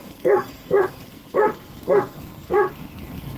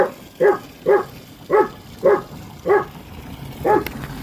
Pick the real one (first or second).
second